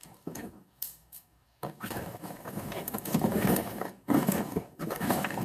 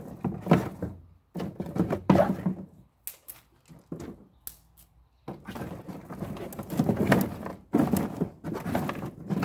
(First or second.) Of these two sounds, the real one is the second